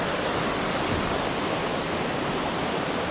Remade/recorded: recorded